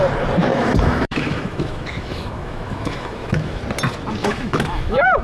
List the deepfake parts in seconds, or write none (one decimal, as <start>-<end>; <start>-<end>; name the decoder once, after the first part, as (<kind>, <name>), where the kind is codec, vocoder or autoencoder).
0.5-3.6 (autoencoder, DAC-VAE); 4.2-5.2